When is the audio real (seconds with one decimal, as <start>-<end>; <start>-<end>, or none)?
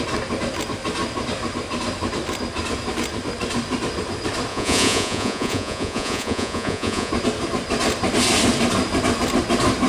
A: 0.0-4.5; 7.1-9.9